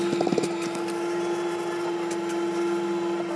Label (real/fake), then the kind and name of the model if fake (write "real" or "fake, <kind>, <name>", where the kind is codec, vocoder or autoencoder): real